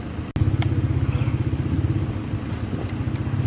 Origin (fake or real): real